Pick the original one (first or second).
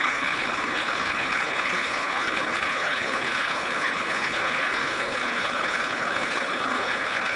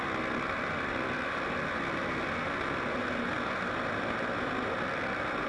second